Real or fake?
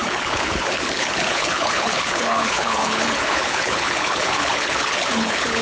fake